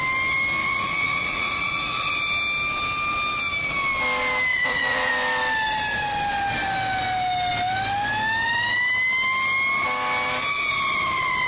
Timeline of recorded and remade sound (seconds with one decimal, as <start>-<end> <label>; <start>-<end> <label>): 0.0-0.6 recorded; 0.6-2.1 remade; 2.1-4.5 recorded; 4.5-5.1 remade; 5.1-11.5 recorded